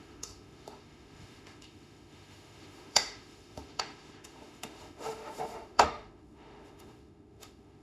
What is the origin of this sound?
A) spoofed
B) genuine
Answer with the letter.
A